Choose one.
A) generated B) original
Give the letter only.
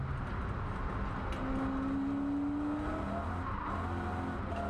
B